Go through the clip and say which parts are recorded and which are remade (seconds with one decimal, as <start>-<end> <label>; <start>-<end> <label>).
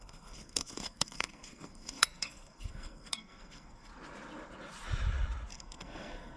0.0-3.9 remade; 3.9-5.5 recorded; 5.5-6.4 remade